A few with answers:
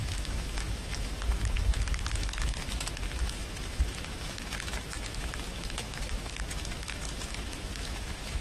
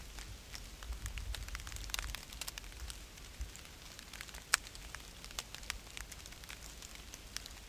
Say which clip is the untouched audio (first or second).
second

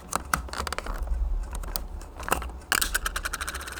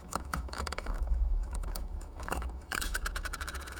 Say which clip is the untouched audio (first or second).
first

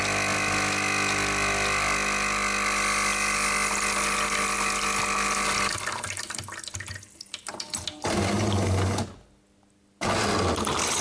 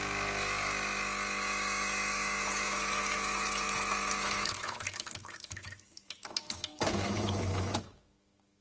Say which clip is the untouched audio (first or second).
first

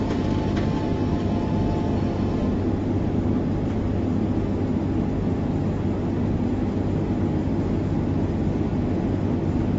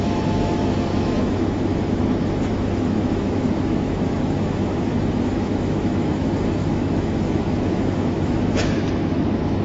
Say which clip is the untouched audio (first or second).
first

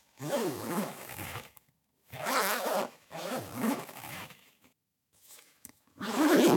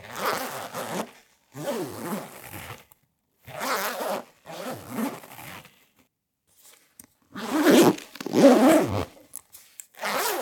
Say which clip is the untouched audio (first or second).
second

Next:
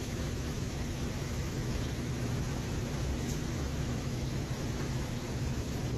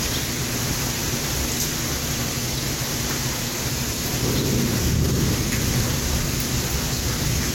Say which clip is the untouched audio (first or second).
second